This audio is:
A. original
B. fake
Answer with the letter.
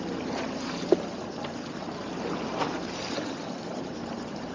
A